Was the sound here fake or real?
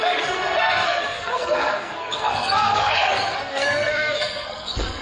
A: fake